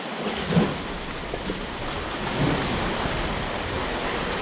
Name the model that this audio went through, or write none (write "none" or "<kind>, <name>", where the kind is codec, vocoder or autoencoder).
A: vocoder, BigVGAN v2